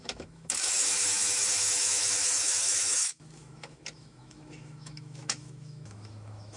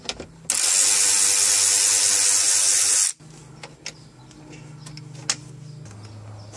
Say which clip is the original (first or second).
second